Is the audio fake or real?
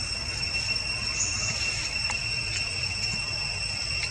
real